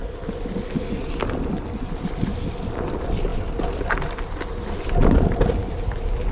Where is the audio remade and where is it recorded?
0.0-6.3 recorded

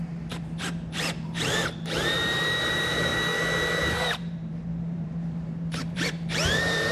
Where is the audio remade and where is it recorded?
0.0-3.1 remade; 3.1-3.8 recorded; 3.8-6.9 remade

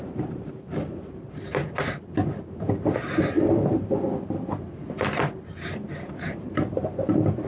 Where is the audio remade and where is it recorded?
0.0-1.6 remade; 1.6-6.1 recorded; 6.1-7.5 remade

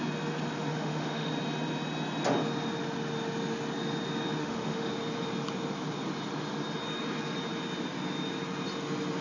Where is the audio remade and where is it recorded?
0.0-0.7 recorded; 0.7-1.3 remade; 1.3-4.4 recorded; 4.4-4.9 remade; 4.9-9.2 recorded

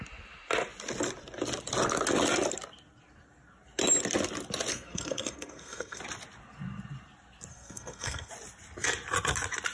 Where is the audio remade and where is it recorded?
0.0-4.7 recorded; 4.7-6.0 remade; 6.0-7.5 recorded; 7.5-8.3 remade; 8.3-9.7 recorded

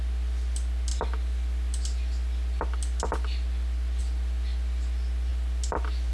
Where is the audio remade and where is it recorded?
0.0-6.1 recorded

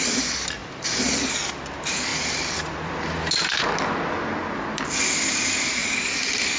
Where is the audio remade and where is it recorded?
0.0-2.1 recorded; 2.1-2.9 remade; 2.9-6.6 recorded

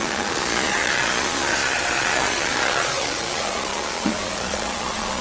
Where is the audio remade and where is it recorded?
0.0-5.2 remade